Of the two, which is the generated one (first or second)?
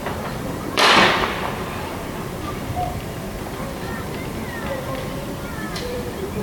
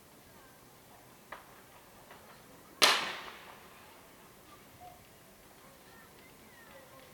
first